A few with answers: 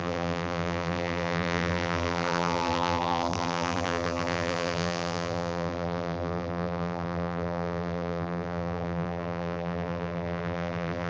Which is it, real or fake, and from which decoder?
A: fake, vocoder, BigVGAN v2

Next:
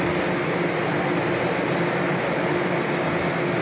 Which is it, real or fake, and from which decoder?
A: real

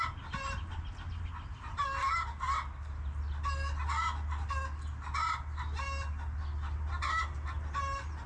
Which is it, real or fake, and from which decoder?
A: real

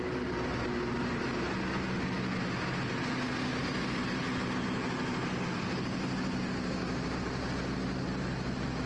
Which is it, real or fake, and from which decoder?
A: real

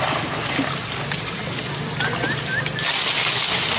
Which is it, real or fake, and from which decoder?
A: real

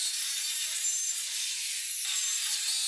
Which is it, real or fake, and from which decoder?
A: real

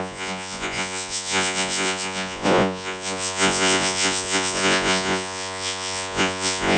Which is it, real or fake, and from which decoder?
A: fake, vocoder, Vocos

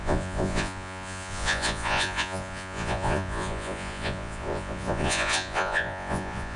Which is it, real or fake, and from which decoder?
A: fake, vocoder, Vocos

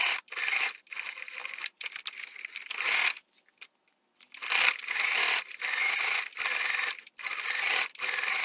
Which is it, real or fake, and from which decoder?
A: real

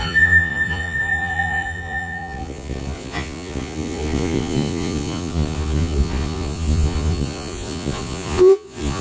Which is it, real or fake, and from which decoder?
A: fake, vocoder, Vocos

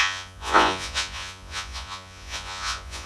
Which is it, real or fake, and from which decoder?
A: fake, vocoder, Vocos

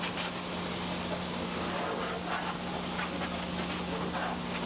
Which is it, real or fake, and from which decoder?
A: real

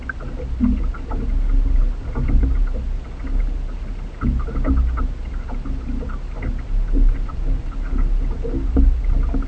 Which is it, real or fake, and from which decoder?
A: real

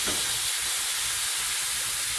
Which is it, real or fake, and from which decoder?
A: real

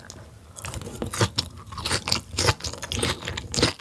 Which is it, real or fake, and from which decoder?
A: real